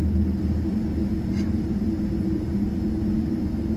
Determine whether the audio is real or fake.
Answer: real